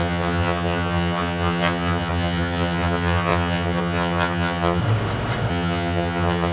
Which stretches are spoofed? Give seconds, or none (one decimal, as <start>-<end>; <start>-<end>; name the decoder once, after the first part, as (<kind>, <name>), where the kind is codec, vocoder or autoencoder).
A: 0.0-4.8 (vocoder, HiFi-GAN); 5.5-6.5